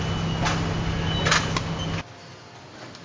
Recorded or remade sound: recorded